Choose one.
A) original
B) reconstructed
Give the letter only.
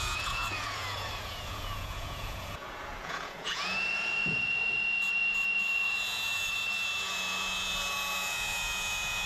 B